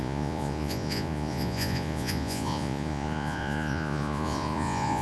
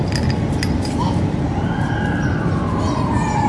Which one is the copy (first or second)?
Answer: first